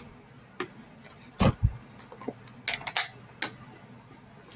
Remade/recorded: recorded